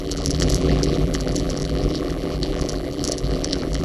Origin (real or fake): fake